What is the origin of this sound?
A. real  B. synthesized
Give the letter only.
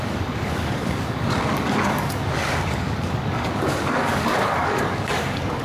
B